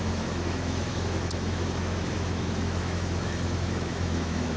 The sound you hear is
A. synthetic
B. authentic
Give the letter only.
A